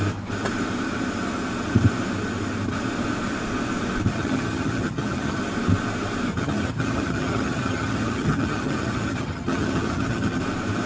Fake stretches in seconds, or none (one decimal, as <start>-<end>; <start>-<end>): 4.1-5.4; 6.3-10.4